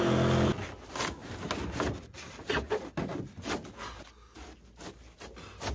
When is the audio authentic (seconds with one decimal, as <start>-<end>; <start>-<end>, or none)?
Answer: 0.0-5.7